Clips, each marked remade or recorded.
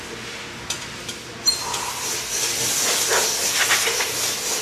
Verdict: recorded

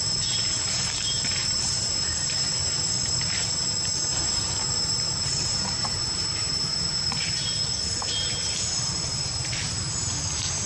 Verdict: remade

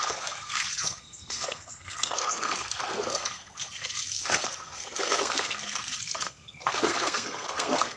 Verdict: remade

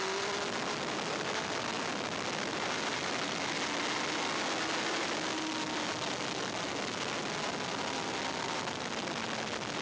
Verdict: recorded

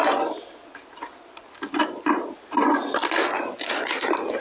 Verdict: recorded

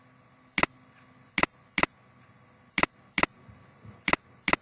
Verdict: recorded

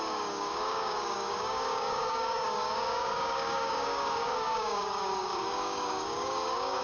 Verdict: remade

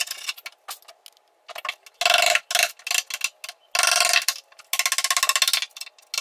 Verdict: recorded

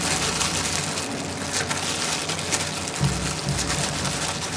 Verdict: recorded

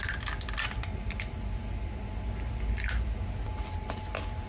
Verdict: recorded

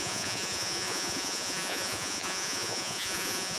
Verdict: remade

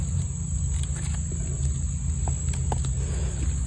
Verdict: recorded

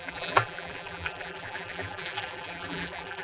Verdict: remade